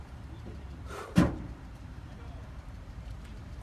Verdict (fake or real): fake